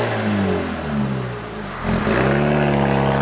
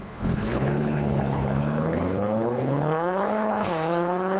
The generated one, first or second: second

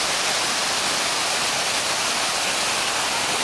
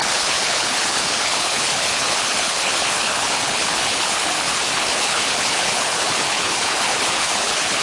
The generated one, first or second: second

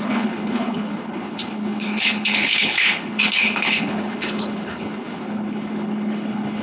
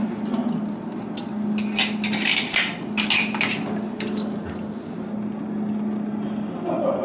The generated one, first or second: first